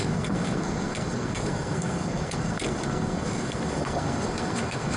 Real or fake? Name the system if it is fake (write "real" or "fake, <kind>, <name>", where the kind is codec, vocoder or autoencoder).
fake, codec, SNAC